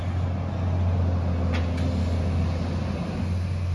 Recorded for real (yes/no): yes